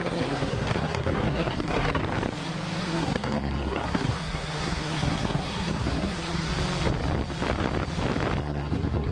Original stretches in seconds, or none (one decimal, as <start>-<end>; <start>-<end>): 2.0-2.8; 6.5-8.4